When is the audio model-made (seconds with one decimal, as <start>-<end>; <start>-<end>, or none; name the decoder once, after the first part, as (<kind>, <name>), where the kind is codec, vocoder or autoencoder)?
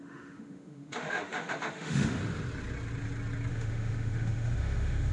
0.0-2.2 (autoencoder, DAC-VAE); 3.5-5.1